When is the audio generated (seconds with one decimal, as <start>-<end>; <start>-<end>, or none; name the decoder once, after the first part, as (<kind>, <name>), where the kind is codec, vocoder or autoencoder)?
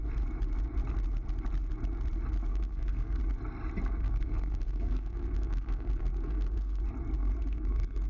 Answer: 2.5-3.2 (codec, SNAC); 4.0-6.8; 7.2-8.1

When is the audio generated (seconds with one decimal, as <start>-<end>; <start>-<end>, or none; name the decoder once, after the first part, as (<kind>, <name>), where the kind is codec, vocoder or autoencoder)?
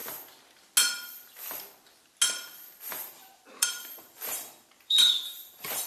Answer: 2.8-5.9 (vocoder, BigVGAN v2)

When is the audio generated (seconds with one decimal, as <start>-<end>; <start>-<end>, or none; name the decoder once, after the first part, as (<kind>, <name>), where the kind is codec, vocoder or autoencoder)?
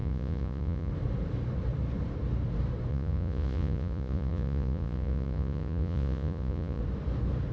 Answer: 0.0-0.9 (vocoder, Vocos); 2.9-6.8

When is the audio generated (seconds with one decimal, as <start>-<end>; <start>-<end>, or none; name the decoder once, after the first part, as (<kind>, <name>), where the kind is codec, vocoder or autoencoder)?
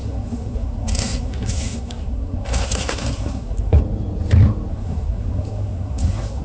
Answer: 0.0-3.8 (codec, SNAC); 4.7-6.4